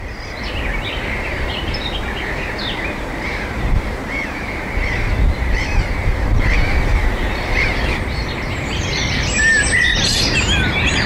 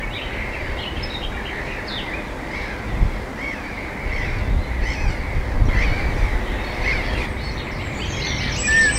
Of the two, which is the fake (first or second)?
first